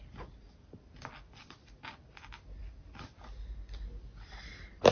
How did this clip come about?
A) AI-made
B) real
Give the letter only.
B